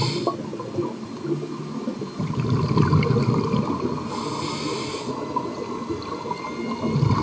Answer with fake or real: real